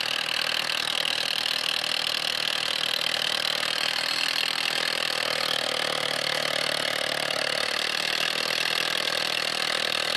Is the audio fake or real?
real